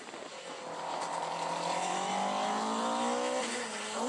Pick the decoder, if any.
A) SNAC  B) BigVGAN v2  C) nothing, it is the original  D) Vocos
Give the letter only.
C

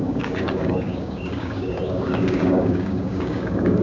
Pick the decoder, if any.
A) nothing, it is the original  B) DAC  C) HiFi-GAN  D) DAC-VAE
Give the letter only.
B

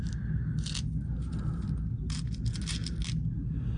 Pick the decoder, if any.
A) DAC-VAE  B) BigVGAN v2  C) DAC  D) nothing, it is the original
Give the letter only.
D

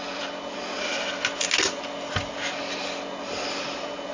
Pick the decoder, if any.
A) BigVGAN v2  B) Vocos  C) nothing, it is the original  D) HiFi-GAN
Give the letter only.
C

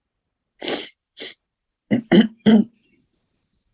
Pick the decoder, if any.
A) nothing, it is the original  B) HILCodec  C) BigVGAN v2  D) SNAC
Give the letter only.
C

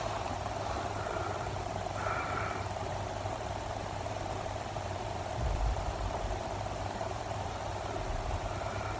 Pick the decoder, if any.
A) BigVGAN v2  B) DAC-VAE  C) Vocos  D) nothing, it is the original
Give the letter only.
A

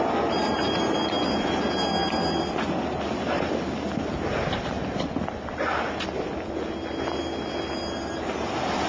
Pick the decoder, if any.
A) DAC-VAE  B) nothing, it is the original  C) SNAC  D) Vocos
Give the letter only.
B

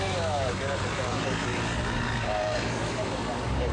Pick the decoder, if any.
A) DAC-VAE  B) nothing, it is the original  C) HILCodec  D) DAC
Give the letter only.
D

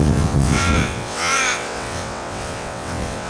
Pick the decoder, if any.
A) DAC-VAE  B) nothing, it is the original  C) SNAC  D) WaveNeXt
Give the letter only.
D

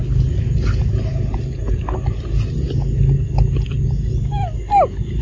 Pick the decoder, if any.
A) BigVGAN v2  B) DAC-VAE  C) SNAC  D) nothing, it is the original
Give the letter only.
D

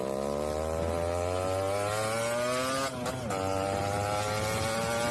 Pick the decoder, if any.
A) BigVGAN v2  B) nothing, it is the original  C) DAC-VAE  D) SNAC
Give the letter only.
B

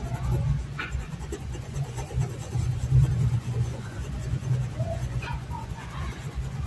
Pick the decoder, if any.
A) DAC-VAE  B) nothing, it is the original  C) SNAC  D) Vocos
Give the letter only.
D